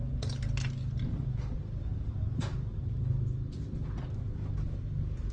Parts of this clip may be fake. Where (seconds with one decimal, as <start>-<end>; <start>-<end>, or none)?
none